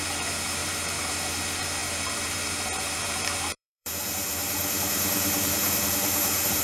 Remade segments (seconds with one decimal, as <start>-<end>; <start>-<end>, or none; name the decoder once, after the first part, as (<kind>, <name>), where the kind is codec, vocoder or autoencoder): 0.0-6.6 (vocoder, BigVGAN v2)